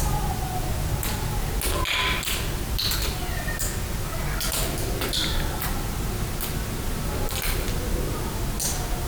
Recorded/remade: recorded